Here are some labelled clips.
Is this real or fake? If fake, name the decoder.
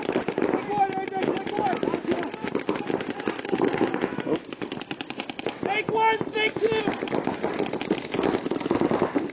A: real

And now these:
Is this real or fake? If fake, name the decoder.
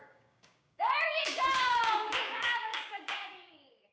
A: fake, codec, DAC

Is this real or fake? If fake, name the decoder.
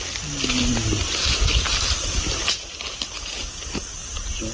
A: real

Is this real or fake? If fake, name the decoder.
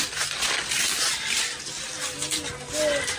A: real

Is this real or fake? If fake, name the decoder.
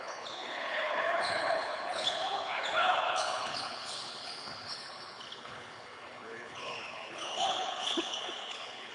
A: fake, codec, HILCodec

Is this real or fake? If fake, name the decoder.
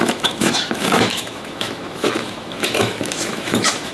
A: fake, autoencoder, DAC-VAE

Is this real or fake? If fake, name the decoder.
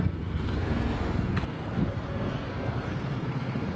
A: fake, codec, SNAC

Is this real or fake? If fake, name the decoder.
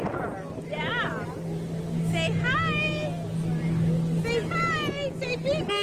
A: real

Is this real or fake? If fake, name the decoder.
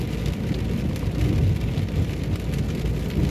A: fake, vocoder, BigVGAN v2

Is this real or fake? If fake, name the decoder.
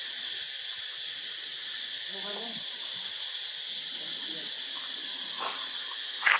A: real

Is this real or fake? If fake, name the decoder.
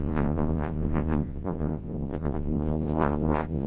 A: fake, vocoder, Vocos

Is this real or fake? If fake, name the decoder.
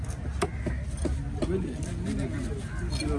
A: real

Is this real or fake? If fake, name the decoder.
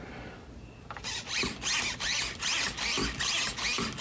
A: real